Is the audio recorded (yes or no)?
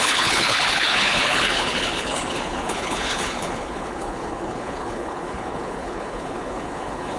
no